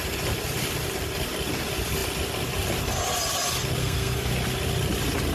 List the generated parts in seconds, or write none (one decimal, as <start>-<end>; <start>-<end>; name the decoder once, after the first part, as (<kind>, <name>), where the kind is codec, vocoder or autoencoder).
3.8-4.3 (codec, SNAC)